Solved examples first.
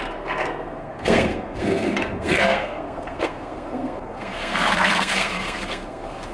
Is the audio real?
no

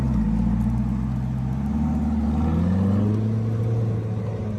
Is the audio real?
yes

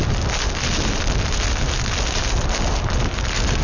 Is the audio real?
yes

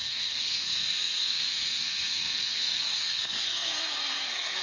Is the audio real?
no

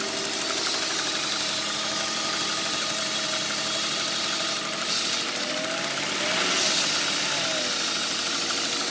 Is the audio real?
yes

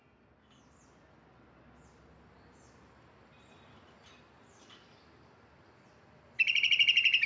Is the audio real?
yes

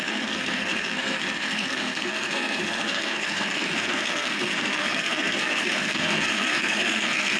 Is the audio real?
no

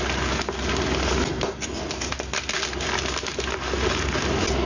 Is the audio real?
yes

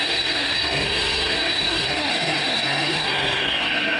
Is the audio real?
no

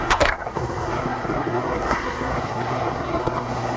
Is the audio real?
no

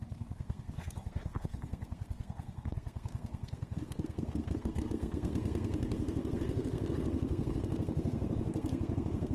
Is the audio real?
no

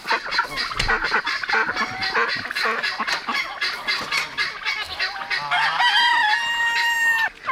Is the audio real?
yes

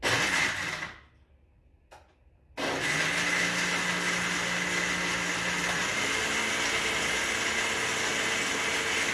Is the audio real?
yes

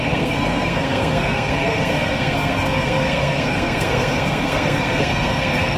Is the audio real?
no